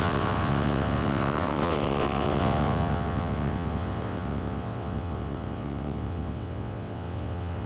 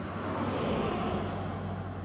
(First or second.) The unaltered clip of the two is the second